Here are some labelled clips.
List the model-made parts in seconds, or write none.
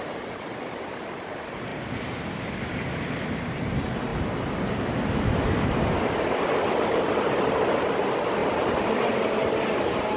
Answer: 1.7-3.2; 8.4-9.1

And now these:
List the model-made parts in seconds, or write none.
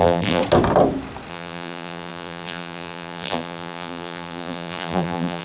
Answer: 0.0-0.4; 1.3-5.4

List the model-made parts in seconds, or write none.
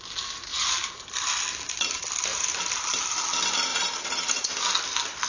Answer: 0.5-1.3; 2.3-3.2; 3.7-4.8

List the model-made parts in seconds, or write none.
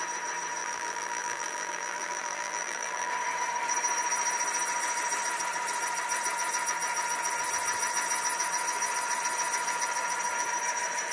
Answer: 0.6-3.1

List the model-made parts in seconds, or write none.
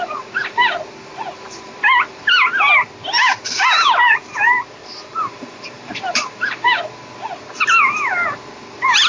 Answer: 4.8-6.8